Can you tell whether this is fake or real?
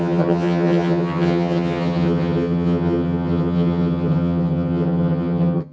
fake